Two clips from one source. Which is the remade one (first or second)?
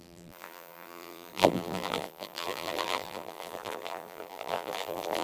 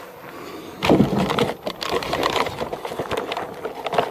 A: first